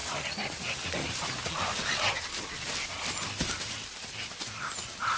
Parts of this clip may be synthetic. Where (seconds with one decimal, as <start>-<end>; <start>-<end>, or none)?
none